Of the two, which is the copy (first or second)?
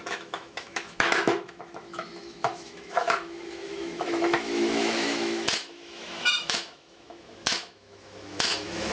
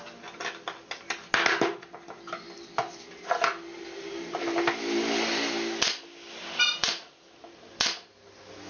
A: first